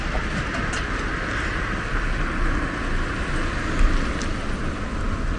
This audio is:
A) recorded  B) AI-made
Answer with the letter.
A